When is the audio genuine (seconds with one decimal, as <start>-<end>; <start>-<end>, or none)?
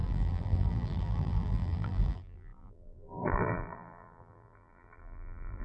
none